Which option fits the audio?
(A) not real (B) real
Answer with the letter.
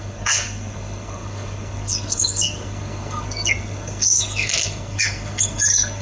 A